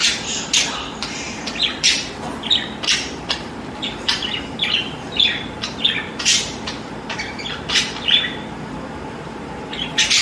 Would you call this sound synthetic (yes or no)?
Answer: yes